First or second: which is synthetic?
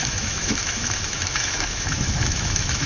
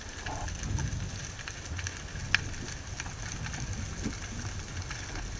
first